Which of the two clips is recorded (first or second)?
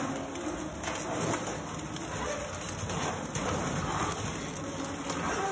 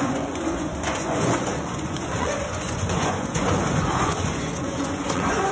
first